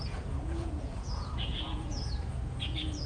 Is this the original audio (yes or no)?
no